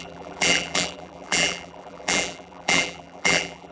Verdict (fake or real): fake